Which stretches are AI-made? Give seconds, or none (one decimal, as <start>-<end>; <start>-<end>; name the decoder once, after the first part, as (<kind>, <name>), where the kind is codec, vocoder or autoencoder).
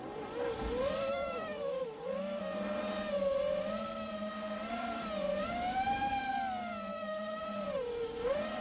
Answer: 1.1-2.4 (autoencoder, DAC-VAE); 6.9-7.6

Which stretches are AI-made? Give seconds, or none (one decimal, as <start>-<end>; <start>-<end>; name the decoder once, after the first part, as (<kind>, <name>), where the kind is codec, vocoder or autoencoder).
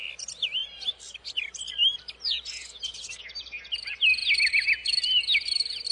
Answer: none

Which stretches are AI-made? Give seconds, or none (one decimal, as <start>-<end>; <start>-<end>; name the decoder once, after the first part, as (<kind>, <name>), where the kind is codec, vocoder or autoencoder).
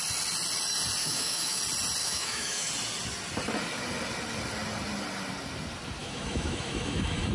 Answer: 1.0-1.6 (autoencoder, DAC-VAE); 2.0-2.7; 6.0-7.3